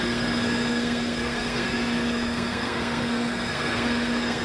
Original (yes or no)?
no